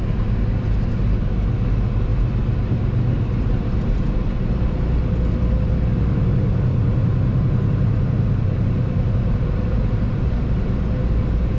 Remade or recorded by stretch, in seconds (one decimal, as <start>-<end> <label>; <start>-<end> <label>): 0.0-6.7 recorded; 6.7-10.4 remade; 10.4-11.6 recorded